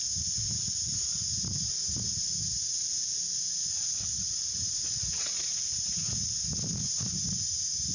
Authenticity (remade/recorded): recorded